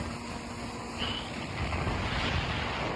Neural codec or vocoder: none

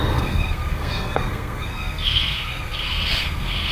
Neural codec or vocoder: codec, SNAC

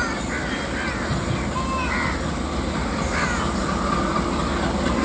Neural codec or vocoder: none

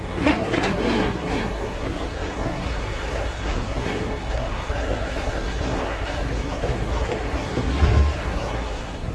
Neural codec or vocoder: codec, SNAC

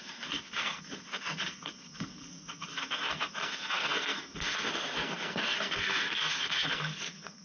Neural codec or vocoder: codec, SNAC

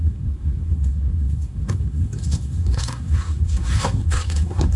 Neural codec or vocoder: codec, SNAC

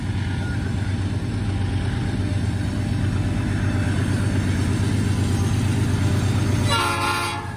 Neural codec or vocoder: none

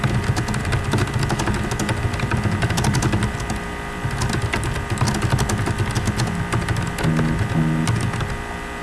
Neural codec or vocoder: none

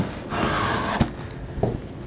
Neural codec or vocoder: none